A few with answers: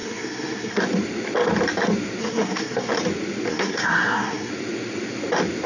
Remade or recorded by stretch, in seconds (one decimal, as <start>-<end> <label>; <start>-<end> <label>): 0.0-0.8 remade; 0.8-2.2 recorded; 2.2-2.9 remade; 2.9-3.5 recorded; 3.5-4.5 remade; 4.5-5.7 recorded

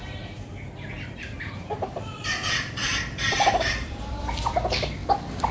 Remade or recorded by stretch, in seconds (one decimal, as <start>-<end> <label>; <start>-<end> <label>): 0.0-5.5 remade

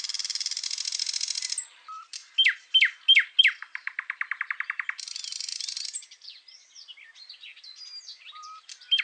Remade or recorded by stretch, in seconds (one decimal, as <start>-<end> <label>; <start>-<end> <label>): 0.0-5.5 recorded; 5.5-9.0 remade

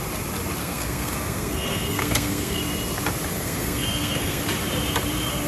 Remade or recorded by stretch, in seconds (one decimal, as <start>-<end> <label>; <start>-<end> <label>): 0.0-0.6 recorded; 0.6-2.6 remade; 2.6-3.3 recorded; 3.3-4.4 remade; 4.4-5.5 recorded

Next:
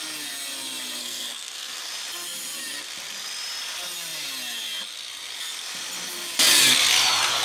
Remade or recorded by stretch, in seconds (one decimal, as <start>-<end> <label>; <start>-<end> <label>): 0.0-1.0 recorded; 1.0-1.9 remade; 1.9-7.4 recorded

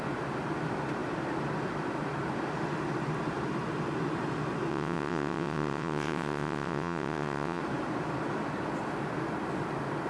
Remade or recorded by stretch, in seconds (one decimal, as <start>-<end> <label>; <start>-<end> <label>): 0.0-4.7 recorded; 4.7-7.6 remade; 7.6-10.1 recorded